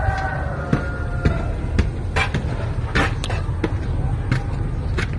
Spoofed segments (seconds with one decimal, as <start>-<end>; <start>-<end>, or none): none